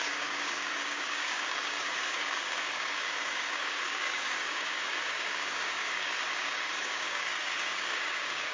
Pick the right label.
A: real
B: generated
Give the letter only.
B